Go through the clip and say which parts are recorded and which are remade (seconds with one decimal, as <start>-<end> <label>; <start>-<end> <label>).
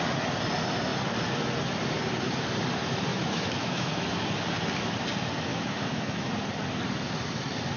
0.0-3.1 recorded; 3.1-3.9 remade; 3.9-5.5 recorded; 5.5-6.3 remade; 6.3-7.8 recorded